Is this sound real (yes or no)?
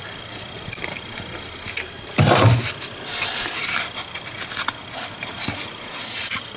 yes